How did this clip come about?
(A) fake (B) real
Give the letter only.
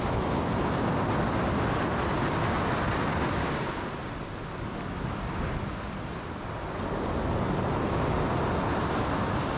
B